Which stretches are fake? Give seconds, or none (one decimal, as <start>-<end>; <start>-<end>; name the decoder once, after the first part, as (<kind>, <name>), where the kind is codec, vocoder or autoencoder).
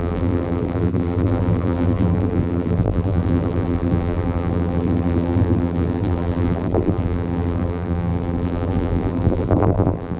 0.0-10.2 (vocoder, BigVGAN v2)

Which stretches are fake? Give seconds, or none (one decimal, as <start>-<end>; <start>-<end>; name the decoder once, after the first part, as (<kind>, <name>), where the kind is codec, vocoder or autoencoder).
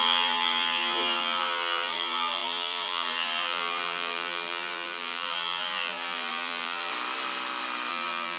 0.0-6.9 (vocoder, BigVGAN v2); 7.9-8.4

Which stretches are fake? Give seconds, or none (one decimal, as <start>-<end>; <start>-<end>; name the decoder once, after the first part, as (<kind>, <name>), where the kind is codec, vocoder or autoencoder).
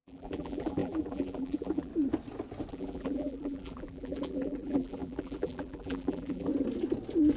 0.0-1.9 (vocoder, BigVGAN v2); 2.7-6.5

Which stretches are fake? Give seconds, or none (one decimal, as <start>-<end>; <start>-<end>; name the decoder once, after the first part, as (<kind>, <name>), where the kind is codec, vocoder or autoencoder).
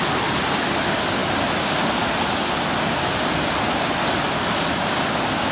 none